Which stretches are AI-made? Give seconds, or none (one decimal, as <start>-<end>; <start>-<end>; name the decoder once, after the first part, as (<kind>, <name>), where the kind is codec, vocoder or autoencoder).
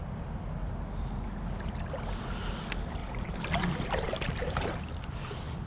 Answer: 3.0-4.8 (vocoder, BigVGAN v2)